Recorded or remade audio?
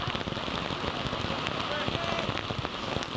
recorded